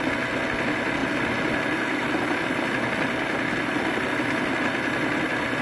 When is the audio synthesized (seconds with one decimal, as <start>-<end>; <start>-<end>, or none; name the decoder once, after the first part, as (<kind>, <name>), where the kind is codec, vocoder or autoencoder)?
none